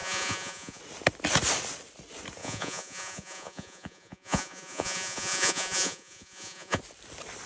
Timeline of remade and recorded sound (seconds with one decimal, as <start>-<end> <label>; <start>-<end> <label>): 0.0-0.8 remade; 0.8-2.4 recorded; 2.4-6.8 remade; 6.8-7.5 recorded